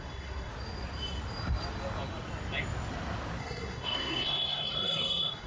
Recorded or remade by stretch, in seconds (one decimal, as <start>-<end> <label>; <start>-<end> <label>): 0.0-0.5 remade; 0.5-3.4 recorded; 3.4-5.5 remade

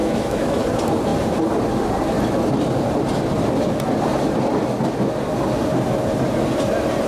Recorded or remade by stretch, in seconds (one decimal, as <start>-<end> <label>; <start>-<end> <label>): 0.0-0.6 remade; 0.6-7.1 recorded

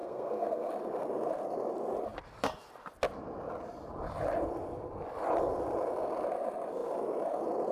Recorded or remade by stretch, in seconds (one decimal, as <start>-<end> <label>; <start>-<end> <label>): 0.0-0.7 remade; 0.7-7.7 recorded